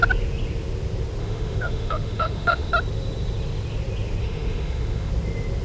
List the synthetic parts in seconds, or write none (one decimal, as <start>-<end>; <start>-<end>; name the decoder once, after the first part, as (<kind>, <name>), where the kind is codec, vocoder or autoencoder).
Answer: 1.2-2.7 (autoencoder, DAC-VAE); 4.2-5.1